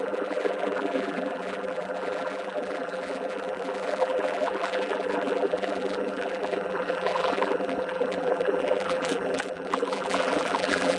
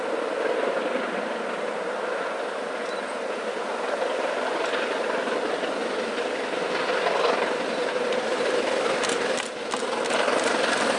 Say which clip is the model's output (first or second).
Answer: first